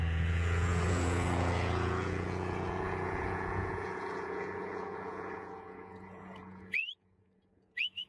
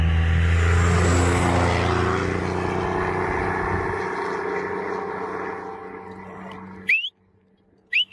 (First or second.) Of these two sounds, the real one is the second